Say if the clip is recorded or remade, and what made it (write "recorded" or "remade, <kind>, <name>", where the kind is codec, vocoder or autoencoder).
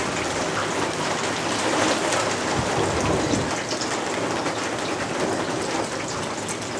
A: recorded